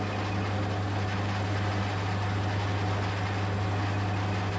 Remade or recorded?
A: recorded